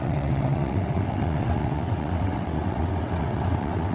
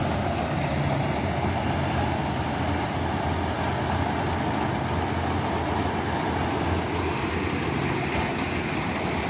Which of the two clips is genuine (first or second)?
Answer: second